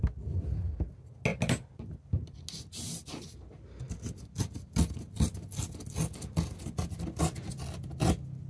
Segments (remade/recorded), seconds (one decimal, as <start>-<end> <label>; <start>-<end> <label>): 0.0-8.5 recorded